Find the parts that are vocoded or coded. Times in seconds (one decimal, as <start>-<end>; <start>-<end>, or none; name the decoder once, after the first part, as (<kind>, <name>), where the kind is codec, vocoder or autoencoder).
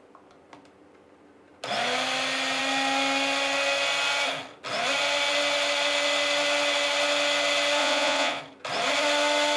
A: 7.8-8.4 (vocoder, Vocos)